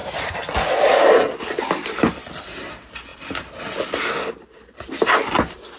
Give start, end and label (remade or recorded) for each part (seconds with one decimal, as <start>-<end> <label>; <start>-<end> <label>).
0.0-5.8 recorded